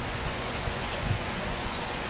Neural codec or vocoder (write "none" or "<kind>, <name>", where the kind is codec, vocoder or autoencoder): vocoder, Vocos